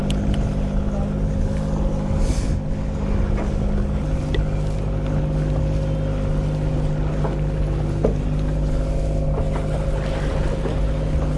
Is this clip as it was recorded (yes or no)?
yes